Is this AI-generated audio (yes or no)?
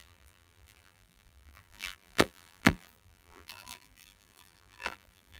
yes